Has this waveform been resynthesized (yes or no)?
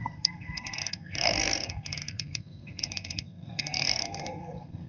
yes